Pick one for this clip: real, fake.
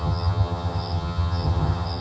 fake